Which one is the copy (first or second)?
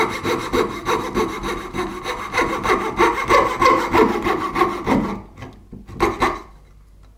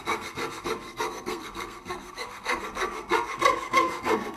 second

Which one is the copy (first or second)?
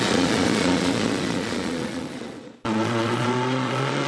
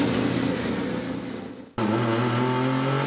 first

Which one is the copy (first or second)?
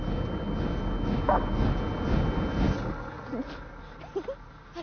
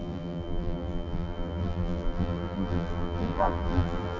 second